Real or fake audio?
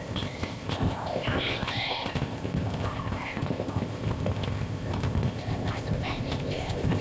fake